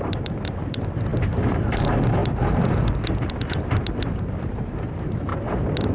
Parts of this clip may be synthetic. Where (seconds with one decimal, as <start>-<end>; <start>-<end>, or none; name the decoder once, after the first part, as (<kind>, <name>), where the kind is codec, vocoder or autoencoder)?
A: 0.0-2.2 (vocoder, BigVGAN v2); 4.4-5.3